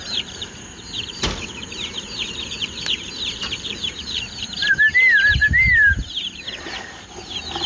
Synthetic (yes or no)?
yes